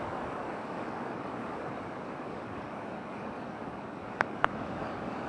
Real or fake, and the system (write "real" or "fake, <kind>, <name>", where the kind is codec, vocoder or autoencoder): fake, codec, DAC